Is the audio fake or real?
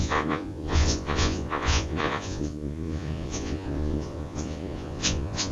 fake